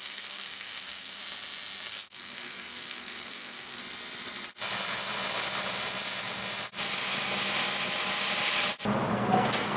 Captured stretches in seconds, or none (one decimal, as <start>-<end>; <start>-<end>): 1.2-1.9; 3.8-9.1